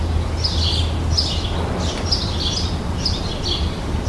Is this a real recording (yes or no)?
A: yes